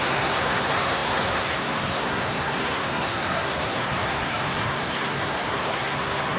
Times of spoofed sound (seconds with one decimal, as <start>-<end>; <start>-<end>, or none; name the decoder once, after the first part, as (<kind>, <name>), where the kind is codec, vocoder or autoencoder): 0.0-6.4 (codec, SNAC)